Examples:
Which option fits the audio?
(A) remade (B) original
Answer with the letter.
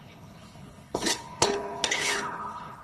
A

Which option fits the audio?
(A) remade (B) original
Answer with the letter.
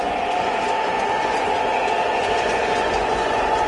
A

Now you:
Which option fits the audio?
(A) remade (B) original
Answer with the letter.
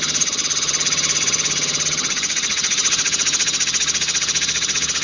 A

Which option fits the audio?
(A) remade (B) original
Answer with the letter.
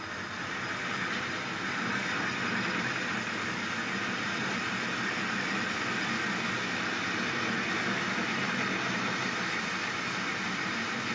B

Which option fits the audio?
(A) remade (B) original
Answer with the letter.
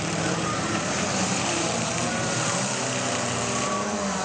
A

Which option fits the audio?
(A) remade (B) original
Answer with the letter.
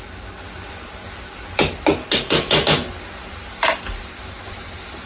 B